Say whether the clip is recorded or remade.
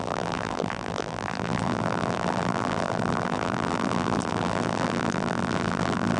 remade